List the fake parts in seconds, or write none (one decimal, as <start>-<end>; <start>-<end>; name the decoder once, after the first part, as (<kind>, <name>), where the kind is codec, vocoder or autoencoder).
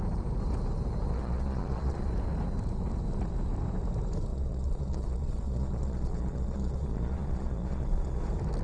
1.1-2.1 (vocoder, Vocos); 4.3-8.2